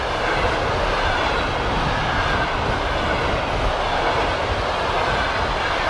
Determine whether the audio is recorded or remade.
recorded